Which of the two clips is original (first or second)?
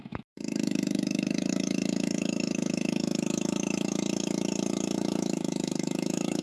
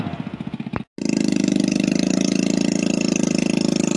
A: second